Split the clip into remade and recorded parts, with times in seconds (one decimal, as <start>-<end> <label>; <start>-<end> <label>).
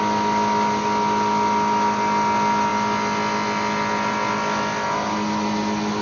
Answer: 0.0-6.0 recorded